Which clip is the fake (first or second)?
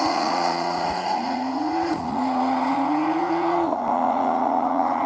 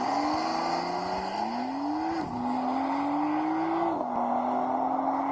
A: first